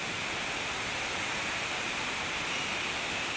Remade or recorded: recorded